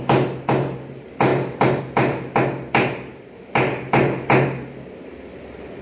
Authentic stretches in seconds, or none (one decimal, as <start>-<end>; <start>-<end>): 0.0-5.8